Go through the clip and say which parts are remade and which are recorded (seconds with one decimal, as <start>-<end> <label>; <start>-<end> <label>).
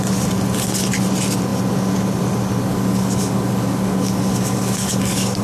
0.0-2.7 recorded; 2.7-5.4 remade